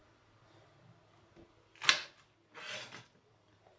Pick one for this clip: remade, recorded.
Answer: recorded